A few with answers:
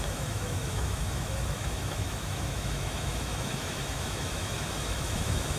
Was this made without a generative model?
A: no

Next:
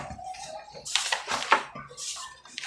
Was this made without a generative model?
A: yes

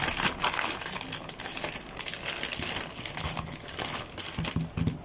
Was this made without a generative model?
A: yes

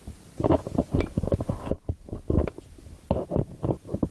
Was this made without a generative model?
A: yes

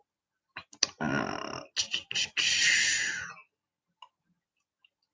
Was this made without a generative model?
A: yes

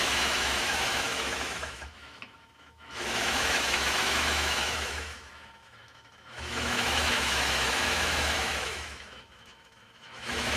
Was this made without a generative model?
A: no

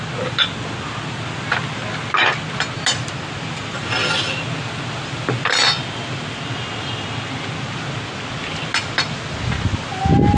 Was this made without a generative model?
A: yes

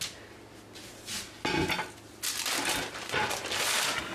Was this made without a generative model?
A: yes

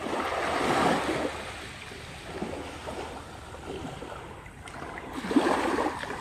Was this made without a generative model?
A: yes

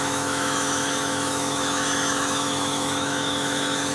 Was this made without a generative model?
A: no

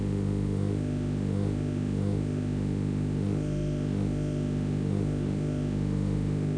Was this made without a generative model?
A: no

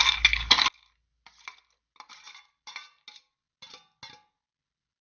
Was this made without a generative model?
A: yes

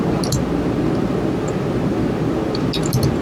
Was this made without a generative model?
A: yes